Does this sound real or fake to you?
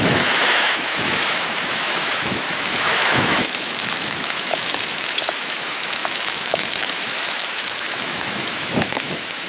fake